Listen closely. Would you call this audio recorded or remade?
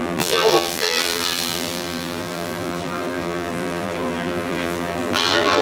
remade